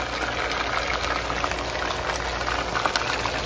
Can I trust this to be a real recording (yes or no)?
yes